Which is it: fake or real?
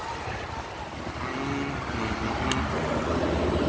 real